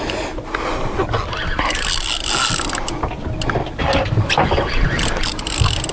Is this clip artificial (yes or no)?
no